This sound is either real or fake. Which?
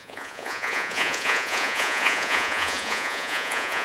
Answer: fake